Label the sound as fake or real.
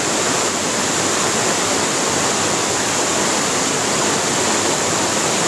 fake